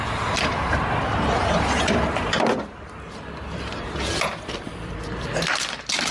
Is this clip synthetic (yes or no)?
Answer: yes